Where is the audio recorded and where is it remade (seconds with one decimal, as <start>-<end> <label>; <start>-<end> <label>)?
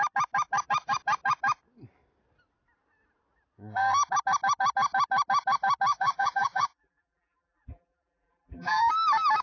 0.0-5.9 recorded; 5.9-8.9 remade; 8.9-9.4 recorded